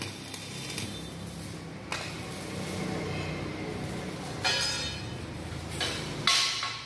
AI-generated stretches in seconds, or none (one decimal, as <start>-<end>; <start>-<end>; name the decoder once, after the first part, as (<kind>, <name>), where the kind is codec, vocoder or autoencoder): none